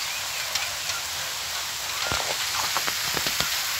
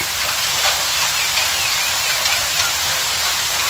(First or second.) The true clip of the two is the first